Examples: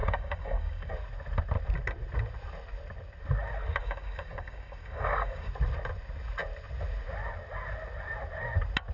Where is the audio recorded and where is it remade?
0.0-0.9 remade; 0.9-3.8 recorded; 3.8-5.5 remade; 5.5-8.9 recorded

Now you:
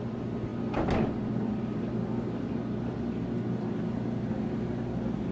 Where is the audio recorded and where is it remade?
0.0-5.3 recorded

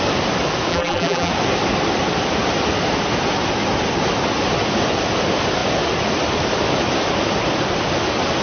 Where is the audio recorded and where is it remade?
0.0-0.7 recorded; 0.7-1.3 remade; 1.3-8.4 recorded

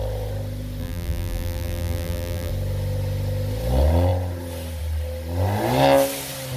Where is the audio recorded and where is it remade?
0.0-0.8 recorded; 0.8-2.5 remade; 2.5-6.6 recorded

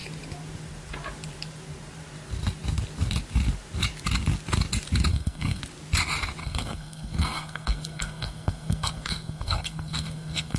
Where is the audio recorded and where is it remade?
0.0-5.1 recorded; 5.1-5.6 remade; 5.6-6.4 recorded; 6.4-10.6 remade

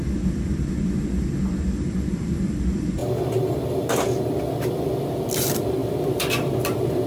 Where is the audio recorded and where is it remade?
0.0-3.0 remade; 3.0-4.7 recorded; 4.7-7.1 remade